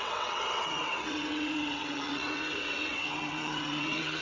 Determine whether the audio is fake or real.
fake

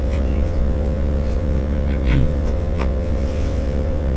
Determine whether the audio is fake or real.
fake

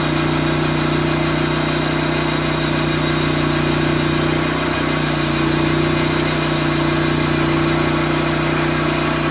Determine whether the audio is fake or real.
real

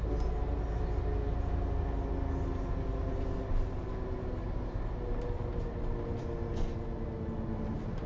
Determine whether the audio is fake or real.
real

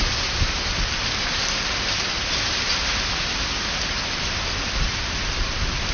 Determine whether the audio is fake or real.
real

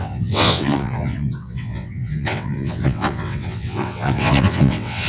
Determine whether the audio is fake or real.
fake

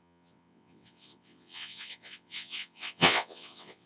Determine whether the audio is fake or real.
fake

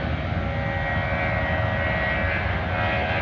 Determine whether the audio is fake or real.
real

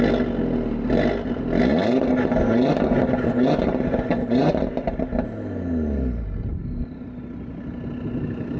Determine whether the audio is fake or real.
real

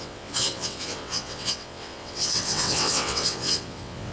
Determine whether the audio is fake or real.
fake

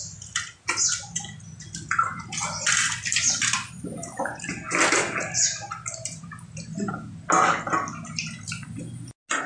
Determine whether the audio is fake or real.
real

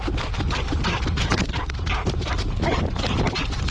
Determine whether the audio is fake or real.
real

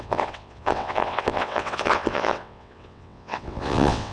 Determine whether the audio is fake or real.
fake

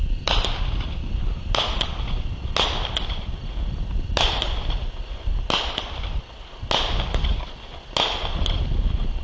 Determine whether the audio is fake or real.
real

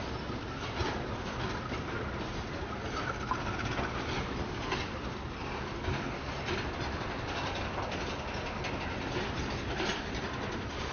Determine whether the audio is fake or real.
real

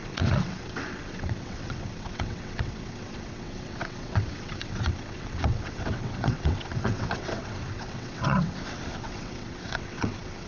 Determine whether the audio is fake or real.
fake